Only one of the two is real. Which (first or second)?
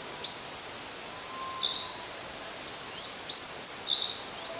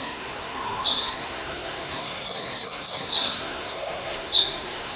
first